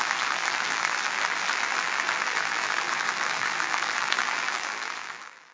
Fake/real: fake